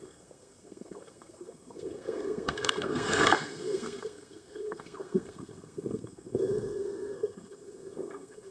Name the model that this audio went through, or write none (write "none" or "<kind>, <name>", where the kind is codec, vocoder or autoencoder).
codec, SNAC